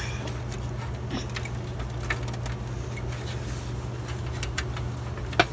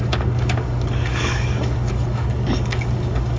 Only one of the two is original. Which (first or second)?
first